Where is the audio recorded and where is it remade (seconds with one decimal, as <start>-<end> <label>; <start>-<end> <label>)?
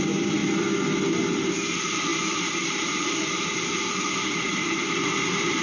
0.0-0.4 remade; 0.4-1.1 recorded; 1.1-5.6 remade